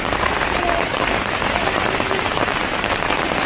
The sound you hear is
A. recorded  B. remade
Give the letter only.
B